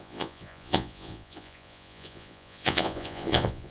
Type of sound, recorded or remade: remade